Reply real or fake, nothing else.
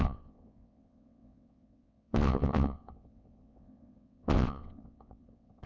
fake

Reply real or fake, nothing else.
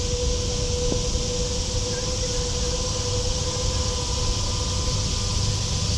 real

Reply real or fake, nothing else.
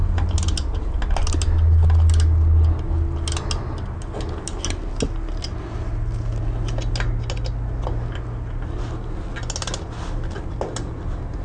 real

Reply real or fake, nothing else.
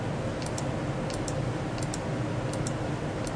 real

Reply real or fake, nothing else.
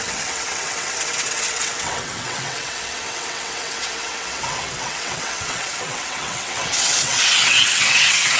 fake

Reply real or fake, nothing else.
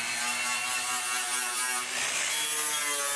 real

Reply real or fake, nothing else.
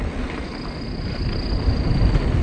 real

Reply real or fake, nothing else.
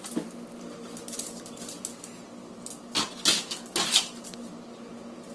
real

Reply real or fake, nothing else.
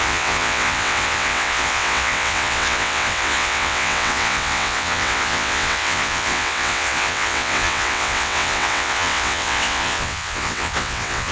fake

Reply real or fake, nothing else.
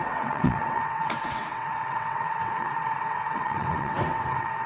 fake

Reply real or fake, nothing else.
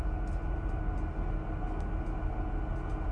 real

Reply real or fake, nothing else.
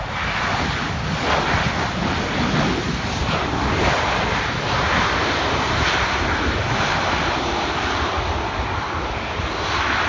real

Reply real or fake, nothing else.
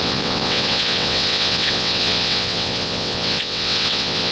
fake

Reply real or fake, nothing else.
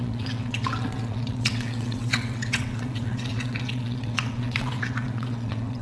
fake